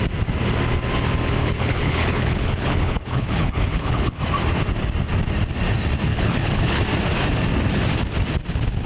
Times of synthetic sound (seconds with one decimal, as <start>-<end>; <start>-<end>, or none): 1.4-4.2; 6.1-6.8